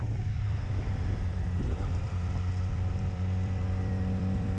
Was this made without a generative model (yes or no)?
no